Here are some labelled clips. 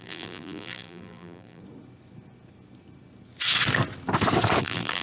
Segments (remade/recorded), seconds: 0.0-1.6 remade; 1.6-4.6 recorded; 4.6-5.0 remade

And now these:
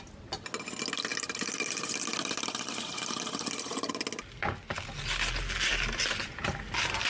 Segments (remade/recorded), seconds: 0.0-1.1 recorded; 1.1-3.9 remade; 3.9-7.1 recorded

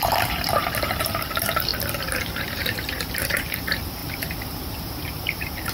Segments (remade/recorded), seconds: 0.0-1.7 remade; 1.7-2.4 recorded; 2.4-5.7 remade

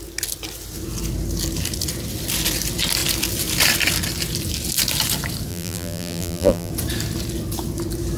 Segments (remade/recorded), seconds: 0.0-5.5 recorded; 5.5-6.7 remade; 6.7-8.2 recorded